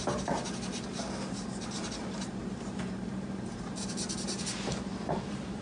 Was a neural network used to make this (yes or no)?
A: yes